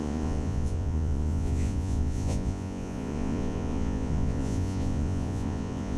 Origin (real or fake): fake